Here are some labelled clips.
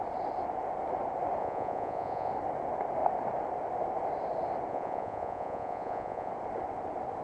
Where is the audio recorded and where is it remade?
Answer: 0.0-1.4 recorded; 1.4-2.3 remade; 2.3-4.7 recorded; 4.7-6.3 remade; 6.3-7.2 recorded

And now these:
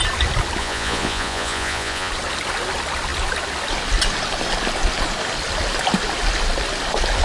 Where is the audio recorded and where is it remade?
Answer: 0.0-0.6 recorded; 0.6-2.1 remade; 2.1-7.2 recorded

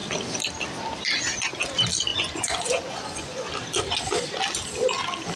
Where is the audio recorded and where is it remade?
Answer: 0.0-2.1 recorded; 2.1-3.5 remade; 3.5-5.4 recorded

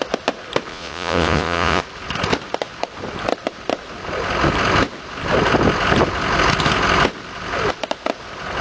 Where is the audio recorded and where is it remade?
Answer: 0.0-0.7 recorded; 0.7-1.8 remade; 1.8-8.6 recorded

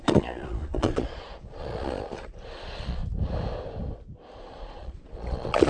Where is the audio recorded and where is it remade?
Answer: 0.0-3.0 remade; 3.0-4.4 recorded; 4.4-5.7 remade

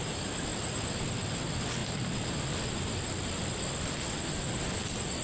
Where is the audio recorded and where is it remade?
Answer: 0.0-5.2 recorded